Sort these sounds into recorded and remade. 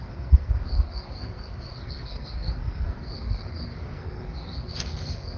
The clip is remade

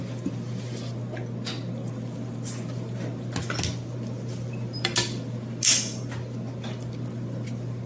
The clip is recorded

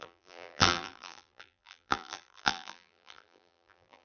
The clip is remade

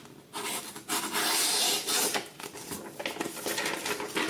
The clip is recorded